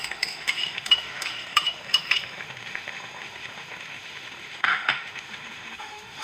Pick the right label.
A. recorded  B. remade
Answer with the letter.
B